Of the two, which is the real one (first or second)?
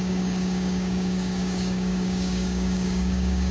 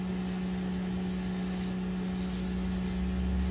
second